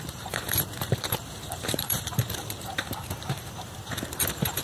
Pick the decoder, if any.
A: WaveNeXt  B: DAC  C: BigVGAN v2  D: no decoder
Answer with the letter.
C